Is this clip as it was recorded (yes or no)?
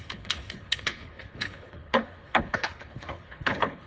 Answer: no